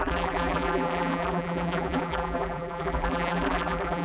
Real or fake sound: fake